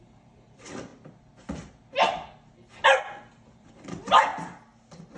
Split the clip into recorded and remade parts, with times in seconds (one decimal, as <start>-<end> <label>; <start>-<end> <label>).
0.0-0.9 remade; 0.9-3.0 recorded; 3.0-4.3 remade; 4.3-5.2 recorded